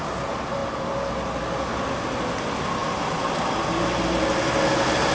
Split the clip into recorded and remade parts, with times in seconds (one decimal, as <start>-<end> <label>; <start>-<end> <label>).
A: 0.0-2.8 recorded; 2.8-3.7 remade; 3.7-5.1 recorded